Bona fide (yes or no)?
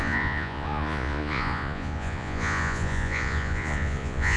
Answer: no